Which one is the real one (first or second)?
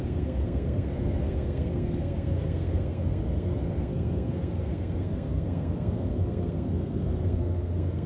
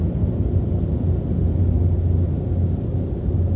second